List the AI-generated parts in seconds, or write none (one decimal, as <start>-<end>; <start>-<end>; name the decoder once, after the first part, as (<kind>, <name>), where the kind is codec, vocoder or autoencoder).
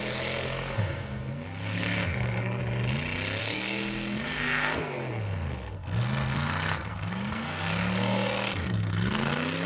0.0-2.6 (codec, SNAC); 3.4-9.7